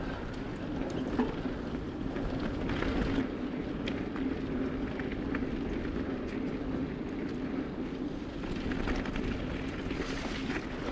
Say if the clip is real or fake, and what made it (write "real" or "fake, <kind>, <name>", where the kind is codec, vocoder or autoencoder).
real